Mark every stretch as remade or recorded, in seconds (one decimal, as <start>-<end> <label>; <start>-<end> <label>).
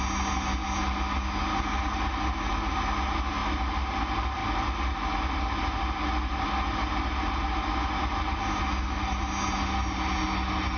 0.0-10.8 recorded